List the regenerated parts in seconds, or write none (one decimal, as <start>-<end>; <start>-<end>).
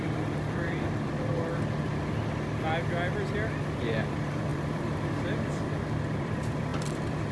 0.0-1.5; 3.6-7.3